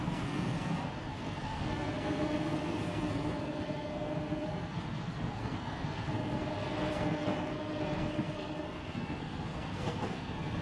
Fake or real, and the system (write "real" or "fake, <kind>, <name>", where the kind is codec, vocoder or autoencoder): fake, codec, SNAC